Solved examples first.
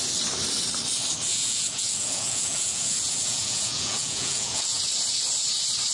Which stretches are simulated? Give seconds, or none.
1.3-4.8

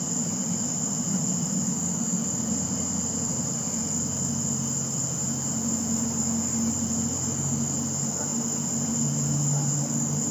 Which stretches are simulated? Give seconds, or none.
none

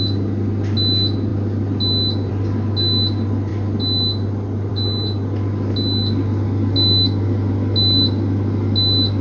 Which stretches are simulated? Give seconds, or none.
none

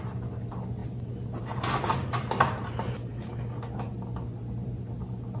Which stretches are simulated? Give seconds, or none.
none